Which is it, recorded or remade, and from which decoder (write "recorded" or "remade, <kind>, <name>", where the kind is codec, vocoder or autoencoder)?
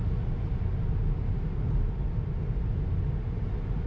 recorded